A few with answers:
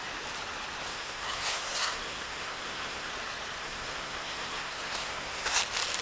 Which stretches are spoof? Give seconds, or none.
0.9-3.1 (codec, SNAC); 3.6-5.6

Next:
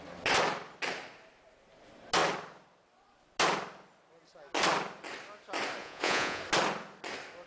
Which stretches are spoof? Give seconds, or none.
5.8-6.4 (vocoder, Vocos)

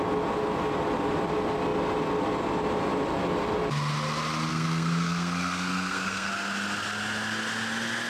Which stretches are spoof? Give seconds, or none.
4.5-6.3 (codec, SNAC)